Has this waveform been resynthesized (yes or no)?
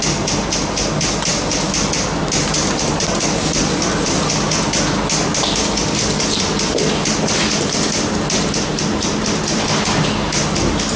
no